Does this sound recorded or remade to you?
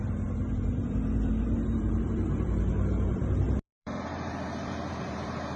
remade